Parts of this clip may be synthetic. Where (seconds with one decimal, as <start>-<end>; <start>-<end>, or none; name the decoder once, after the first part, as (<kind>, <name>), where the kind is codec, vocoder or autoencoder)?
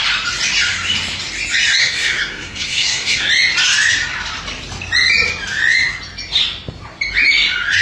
1.8-3.3 (codec, SNAC)